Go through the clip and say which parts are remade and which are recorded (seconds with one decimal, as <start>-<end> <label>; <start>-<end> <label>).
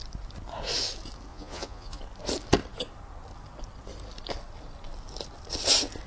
0.0-1.3 recorded; 1.3-2.0 remade; 2.0-6.1 recorded